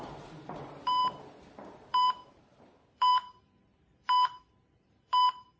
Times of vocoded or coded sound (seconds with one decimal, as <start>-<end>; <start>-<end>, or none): 0.0-5.6